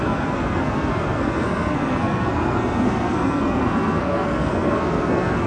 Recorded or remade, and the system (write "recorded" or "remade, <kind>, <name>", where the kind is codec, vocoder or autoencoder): remade, codec, SNAC